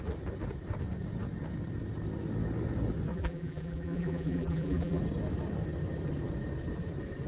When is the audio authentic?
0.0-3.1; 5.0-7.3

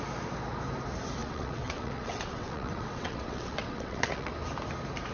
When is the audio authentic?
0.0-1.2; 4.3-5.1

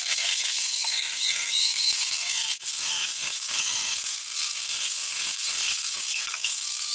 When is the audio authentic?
none

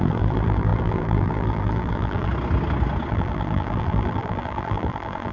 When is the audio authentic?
2.3-3.1

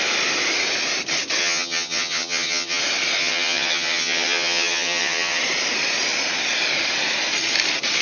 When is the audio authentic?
0.0-1.4; 2.8-3.2; 5.4-8.0

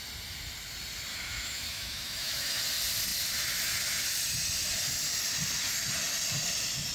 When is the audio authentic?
0.0-1.1; 2.6-6.9

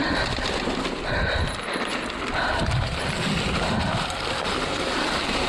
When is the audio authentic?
0.0-5.5